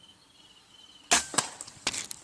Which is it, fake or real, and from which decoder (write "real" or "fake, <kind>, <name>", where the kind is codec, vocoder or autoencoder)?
real